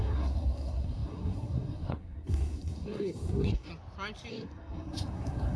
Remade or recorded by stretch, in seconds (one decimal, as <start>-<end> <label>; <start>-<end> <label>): 0.0-3.7 remade; 3.7-4.3 recorded; 4.3-5.6 remade